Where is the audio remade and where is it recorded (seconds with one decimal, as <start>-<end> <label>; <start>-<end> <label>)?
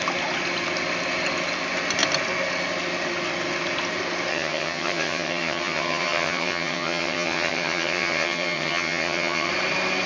0.0-4.3 recorded; 4.3-9.5 remade; 9.5-10.1 recorded